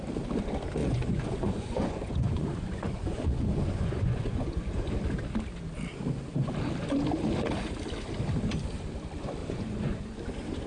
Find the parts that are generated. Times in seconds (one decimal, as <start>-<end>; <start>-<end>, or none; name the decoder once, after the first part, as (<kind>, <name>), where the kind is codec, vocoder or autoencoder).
0.8-4.9 (vocoder, Vocos); 9.4-10.2